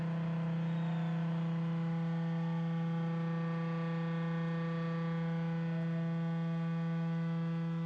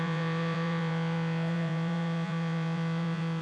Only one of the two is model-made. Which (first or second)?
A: second